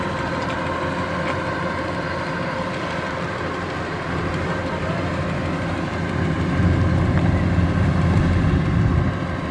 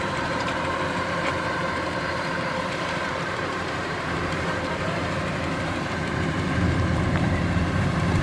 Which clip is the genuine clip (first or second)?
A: first